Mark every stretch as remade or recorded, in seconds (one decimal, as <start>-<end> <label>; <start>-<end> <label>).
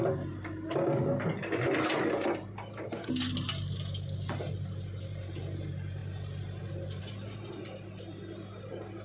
0.0-9.0 recorded